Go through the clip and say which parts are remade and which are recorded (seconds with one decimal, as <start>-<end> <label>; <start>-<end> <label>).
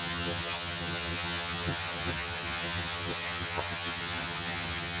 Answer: 0.0-5.0 remade